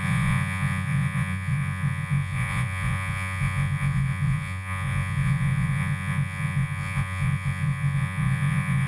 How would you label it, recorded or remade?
remade